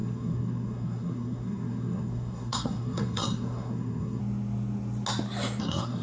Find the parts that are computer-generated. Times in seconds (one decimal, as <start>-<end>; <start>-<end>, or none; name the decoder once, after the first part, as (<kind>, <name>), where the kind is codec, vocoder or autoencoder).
0.0-4.2 (codec, SNAC); 5.6-6.0